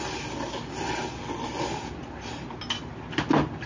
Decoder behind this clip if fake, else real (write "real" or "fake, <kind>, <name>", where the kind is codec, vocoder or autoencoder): real